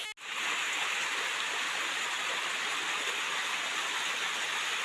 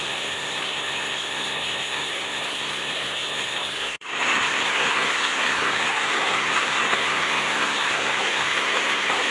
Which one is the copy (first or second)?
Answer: second